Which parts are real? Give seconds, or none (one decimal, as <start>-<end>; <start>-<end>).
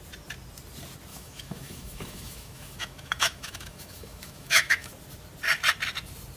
0.0-1.1; 4.9-6.4